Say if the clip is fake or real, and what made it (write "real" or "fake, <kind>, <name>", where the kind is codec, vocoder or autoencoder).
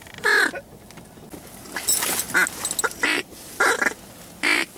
real